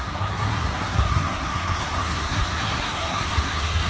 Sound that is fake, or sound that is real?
fake